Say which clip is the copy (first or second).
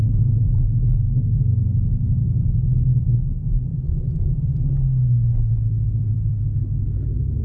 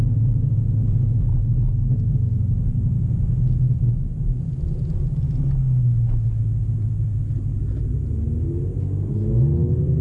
first